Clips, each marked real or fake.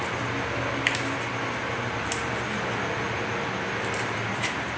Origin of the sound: real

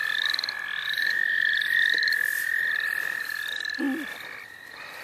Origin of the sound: real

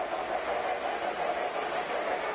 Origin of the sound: real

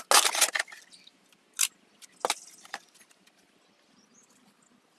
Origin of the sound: real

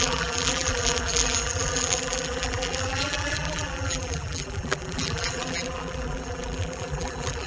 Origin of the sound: fake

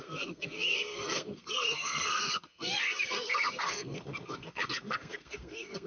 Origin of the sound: fake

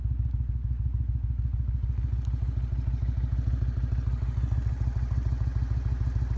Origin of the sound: real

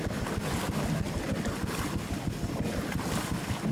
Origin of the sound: real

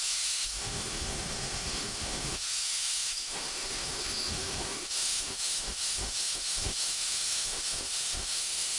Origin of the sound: fake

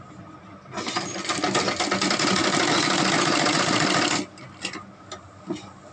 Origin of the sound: real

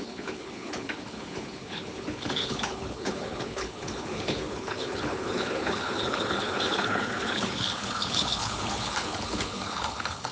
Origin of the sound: fake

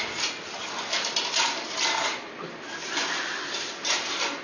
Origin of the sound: real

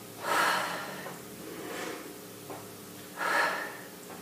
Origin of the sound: real